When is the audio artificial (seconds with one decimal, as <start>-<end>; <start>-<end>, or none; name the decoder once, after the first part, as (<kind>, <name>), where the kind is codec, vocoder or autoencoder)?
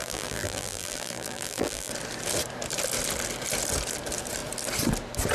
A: 0.0-1.9 (vocoder, BigVGAN v2)